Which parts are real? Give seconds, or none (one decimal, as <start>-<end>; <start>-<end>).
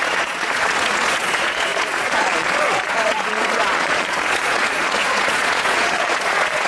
none